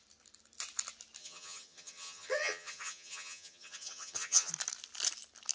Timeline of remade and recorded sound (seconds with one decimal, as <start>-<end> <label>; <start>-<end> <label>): 0.0-1.2 recorded; 1.2-4.5 remade; 4.5-5.5 recorded